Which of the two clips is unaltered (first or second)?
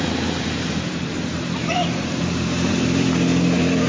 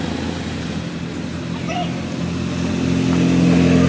second